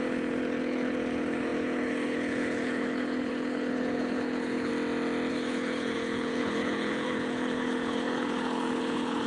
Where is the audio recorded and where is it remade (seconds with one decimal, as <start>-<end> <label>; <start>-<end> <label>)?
0.0-4.7 remade; 4.7-5.3 recorded; 5.3-9.3 remade